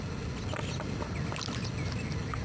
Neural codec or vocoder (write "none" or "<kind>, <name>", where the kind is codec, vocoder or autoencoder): none